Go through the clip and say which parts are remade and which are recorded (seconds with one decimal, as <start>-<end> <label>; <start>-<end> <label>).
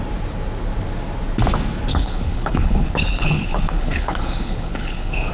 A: 0.0-1.9 recorded; 1.9-5.3 remade